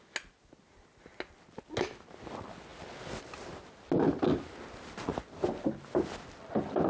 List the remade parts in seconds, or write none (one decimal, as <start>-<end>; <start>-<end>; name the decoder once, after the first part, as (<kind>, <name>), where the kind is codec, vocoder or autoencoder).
none